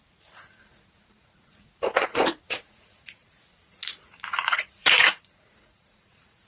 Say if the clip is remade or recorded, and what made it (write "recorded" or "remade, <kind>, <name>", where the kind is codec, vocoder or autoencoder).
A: remade, vocoder, Vocos